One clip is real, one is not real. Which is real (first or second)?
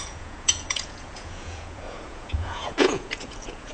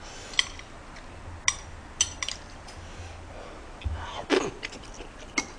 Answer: second